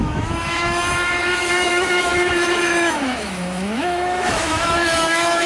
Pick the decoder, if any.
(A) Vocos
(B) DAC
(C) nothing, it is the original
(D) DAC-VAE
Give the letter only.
D